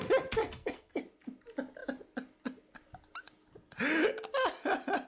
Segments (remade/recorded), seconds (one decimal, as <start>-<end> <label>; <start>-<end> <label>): 0.0-0.4 recorded; 0.4-1.0 remade; 1.0-5.1 recorded